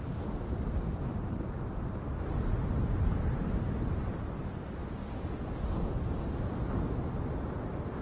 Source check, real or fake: real